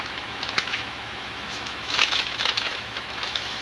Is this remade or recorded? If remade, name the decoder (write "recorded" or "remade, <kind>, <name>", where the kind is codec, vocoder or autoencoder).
remade, autoencoder, DAC-VAE